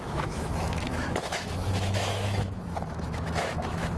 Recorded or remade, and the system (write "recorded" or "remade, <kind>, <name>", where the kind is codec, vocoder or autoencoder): remade, autoencoder, DAC-VAE